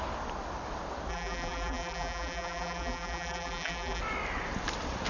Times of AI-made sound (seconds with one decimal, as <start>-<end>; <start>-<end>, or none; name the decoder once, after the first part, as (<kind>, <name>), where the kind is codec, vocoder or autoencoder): 1.1-4.0 (vocoder, BigVGAN v2)

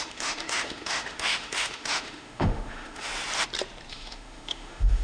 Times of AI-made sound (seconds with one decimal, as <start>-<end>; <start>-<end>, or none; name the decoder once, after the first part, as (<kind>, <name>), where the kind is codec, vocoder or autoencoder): 0.0-3.1 (autoencoder, DAC-VAE); 3.9-5.0

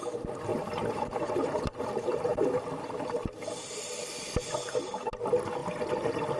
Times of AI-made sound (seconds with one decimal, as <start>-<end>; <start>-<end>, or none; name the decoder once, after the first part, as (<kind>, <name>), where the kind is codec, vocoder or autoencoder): 0.5-4.3 (vocoder, BigVGAN v2)

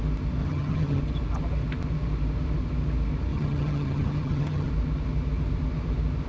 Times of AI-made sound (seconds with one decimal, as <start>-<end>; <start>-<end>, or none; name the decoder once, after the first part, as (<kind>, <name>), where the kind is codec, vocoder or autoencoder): 0.4-1.0 (vocoder, HiFi-GAN); 3.3-4.7

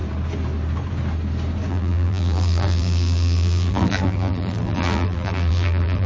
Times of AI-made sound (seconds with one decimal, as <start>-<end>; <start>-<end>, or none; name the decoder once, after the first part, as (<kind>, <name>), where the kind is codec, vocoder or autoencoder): 1.7-6.1 (vocoder, BigVGAN v2)

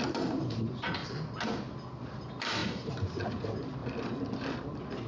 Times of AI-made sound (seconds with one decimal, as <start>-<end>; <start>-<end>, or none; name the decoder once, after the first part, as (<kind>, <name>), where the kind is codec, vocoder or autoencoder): 0.0-1.0 (vocoder, BigVGAN v2); 1.9-3.8; 4.5-5.1

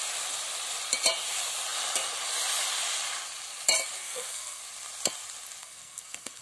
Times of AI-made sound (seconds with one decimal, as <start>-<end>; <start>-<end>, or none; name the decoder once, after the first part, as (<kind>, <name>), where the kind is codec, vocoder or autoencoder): 4.0-4.6 (codec, SNAC); 5.6-6.4

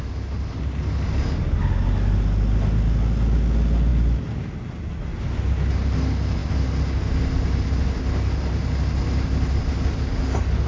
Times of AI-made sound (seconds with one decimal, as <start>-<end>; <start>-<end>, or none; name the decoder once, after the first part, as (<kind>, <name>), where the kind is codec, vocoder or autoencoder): none